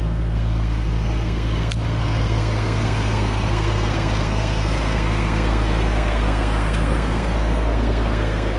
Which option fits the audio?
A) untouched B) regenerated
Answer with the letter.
B